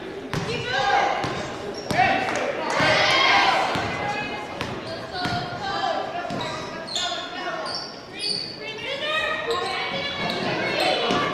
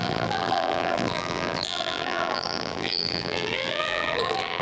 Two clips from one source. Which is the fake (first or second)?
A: second